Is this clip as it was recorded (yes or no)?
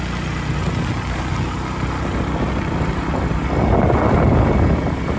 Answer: yes